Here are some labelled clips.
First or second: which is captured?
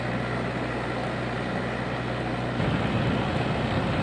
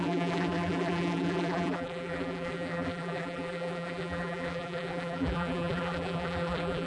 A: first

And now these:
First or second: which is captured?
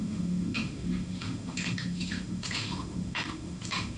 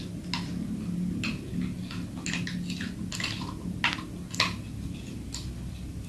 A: second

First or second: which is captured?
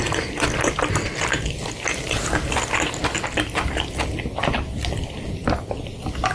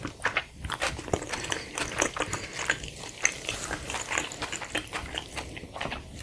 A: first